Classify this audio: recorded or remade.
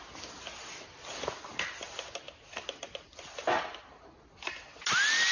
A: recorded